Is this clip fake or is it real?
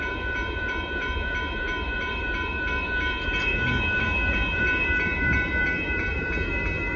fake